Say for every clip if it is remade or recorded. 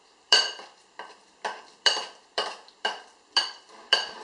remade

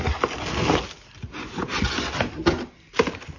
recorded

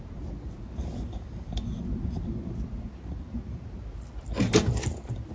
recorded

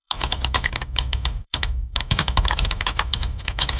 remade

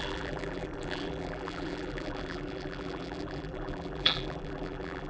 remade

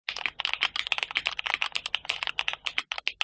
recorded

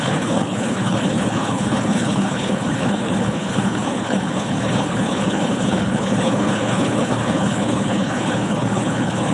remade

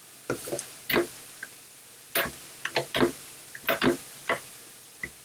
recorded